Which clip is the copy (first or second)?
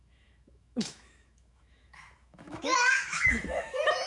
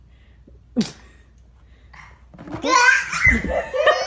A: first